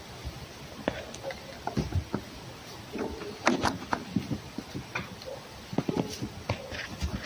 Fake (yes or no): no